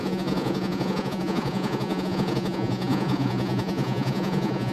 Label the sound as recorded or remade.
remade